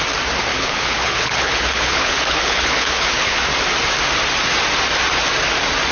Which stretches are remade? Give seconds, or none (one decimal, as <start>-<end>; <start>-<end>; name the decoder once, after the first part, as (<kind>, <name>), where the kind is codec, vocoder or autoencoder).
0.5-3.4 (codec, HILCodec)